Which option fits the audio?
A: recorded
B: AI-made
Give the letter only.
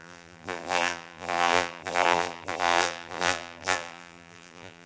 B